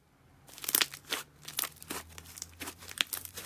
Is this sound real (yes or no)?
yes